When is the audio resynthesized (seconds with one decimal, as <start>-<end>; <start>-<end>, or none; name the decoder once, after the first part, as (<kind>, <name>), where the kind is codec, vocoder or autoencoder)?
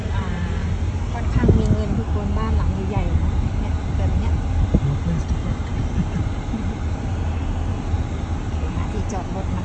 none